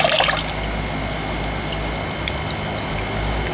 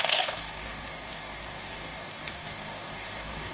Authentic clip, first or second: first